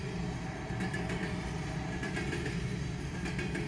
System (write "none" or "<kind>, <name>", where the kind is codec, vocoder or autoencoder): none